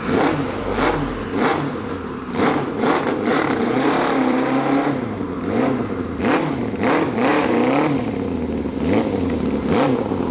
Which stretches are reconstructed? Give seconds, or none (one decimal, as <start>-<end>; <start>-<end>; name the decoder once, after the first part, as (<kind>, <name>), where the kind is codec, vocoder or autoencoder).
1.5-2.9 (vocoder, BigVGAN v2); 3.3-6.2; 7.3-8.0